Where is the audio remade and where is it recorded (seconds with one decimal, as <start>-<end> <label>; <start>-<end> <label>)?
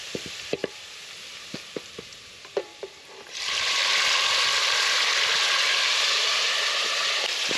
0.0-0.6 remade; 0.6-2.0 recorded; 2.0-3.8 remade; 3.8-5.8 recorded; 5.8-7.6 remade